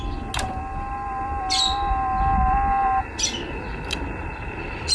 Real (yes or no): yes